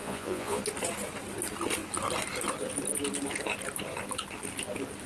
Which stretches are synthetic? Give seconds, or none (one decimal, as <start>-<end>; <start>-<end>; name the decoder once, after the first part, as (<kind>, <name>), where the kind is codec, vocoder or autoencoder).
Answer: 0.0-0.6 (vocoder, Vocos)